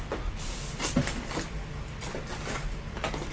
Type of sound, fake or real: real